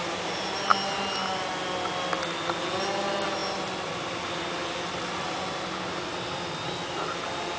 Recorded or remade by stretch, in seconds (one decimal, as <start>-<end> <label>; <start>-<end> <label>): 0.0-7.6 recorded